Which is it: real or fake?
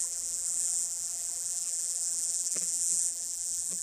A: fake